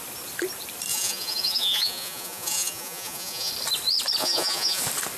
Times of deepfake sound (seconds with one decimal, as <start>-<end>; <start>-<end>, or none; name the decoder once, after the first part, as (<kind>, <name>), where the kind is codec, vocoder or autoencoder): 0.9-3.5 (vocoder, Vocos); 4.2-4.8